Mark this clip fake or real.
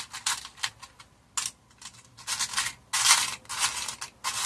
real